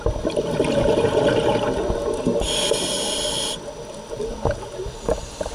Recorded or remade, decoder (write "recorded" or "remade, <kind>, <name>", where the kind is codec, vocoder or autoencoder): recorded